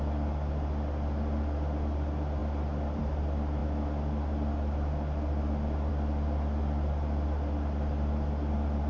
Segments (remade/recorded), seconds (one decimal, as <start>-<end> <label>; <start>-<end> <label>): 0.0-8.9 recorded